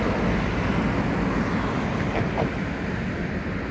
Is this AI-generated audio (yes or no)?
no